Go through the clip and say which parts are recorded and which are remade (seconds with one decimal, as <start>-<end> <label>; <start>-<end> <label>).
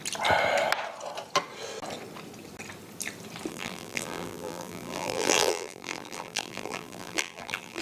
0.0-3.5 recorded; 3.5-7.8 remade